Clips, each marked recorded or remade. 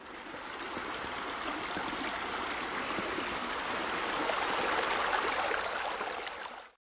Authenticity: recorded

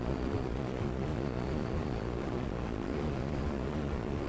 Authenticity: remade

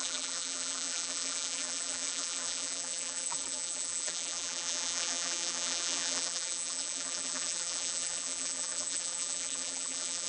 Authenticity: remade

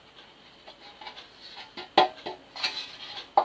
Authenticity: recorded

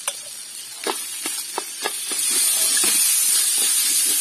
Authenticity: recorded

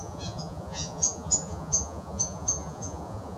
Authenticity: remade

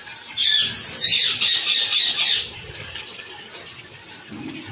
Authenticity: recorded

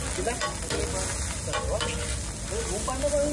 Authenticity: recorded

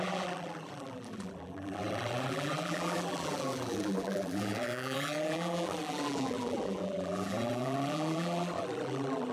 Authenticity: remade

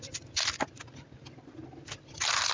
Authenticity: recorded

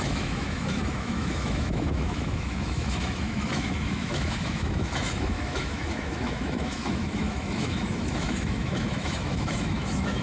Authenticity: remade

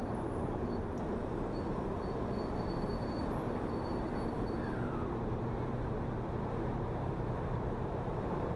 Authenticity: remade